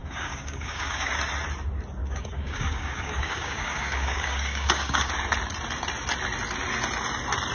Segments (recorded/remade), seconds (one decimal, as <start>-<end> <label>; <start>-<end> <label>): 0.0-1.1 remade; 1.1-2.0 recorded; 2.0-5.1 remade; 5.1-7.5 recorded